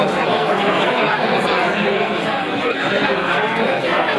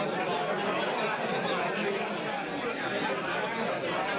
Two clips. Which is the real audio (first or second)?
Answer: second